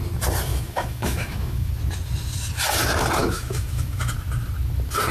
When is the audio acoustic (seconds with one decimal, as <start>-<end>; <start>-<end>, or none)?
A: 0.0-0.5; 1.7-3.2; 4.1-5.1